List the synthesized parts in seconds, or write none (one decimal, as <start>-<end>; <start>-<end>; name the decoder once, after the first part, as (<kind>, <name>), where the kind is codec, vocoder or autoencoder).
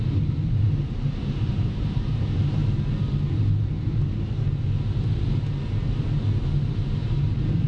0.0-2.6 (vocoder, BigVGAN v2); 7.2-7.7